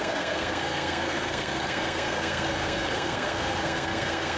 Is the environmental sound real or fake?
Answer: fake